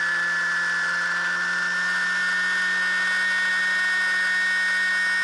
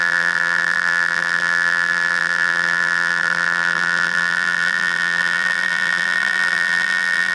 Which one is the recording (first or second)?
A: first